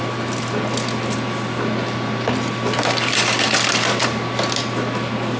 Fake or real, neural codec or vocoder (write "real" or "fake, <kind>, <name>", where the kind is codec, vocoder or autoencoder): real